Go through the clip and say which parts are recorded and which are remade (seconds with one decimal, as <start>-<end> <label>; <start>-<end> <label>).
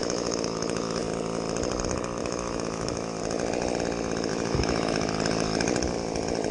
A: 0.0-1.0 remade; 1.0-2.2 recorded; 2.2-3.2 remade; 3.2-4.3 recorded; 4.3-4.9 remade; 4.9-6.5 recorded